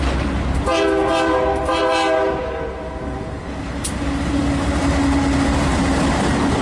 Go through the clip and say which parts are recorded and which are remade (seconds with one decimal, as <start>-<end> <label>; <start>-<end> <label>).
0.0-6.6 recorded